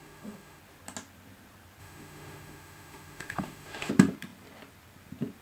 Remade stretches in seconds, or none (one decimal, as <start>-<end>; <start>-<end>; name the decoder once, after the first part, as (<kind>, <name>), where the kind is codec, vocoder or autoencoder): 0.0-0.6 (autoencoder, DAC-VAE); 1.8-3.9